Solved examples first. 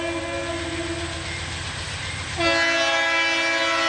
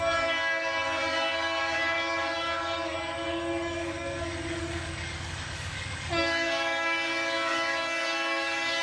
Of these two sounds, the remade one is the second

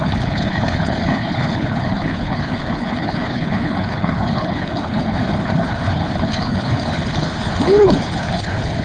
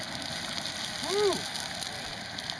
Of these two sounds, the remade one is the first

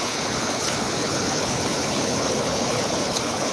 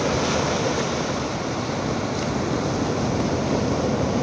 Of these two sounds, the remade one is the first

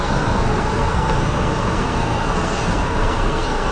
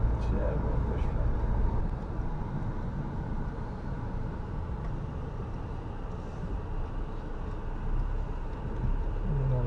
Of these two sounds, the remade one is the first